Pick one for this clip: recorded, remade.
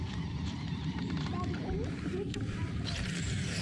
remade